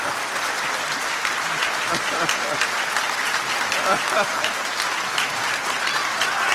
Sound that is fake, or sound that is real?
real